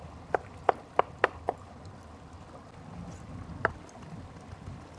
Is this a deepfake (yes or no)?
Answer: no